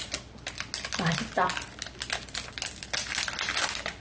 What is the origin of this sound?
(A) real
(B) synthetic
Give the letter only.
A